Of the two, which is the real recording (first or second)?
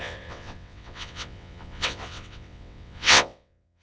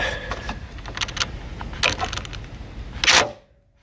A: second